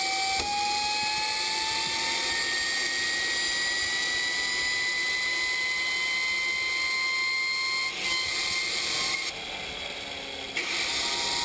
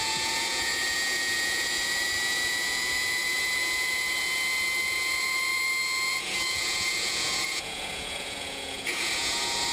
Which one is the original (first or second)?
first